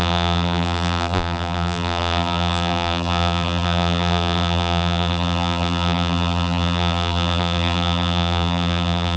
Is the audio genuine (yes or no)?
no